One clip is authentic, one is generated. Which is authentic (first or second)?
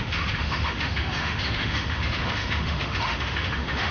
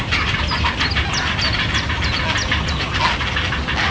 second